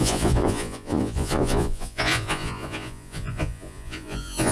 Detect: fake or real fake